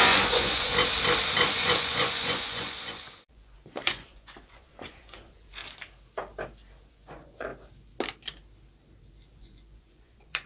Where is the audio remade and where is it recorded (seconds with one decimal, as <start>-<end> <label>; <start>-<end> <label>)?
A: 0.0-0.7 remade; 0.7-1.5 recorded; 1.5-5.6 remade; 5.6-6.9 recorded; 6.9-7.5 remade; 7.5-9.4 recorded; 9.4-10.5 remade